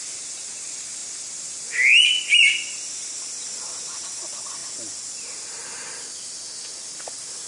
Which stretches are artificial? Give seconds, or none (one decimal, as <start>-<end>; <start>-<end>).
none